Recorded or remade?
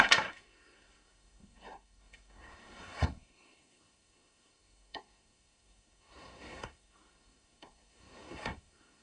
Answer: remade